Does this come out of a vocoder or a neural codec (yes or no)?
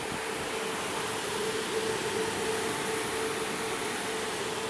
no